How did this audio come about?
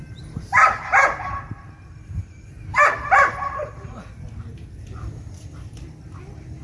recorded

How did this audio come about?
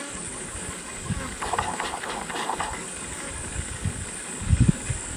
remade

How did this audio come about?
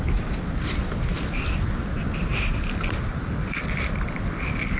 recorded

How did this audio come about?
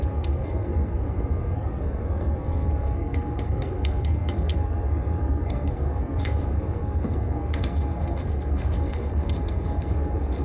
remade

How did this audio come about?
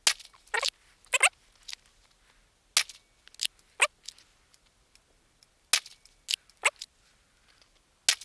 recorded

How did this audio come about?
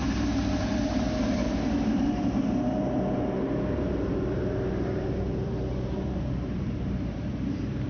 remade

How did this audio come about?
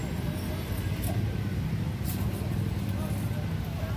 recorded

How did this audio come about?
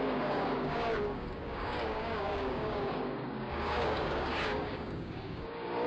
remade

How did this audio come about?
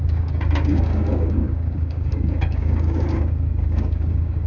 remade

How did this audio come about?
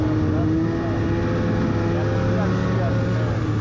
recorded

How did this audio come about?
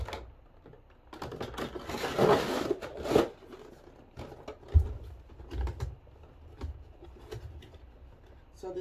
recorded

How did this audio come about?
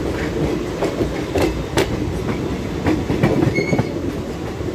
recorded